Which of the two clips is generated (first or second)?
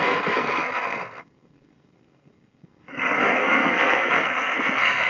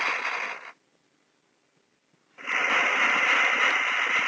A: first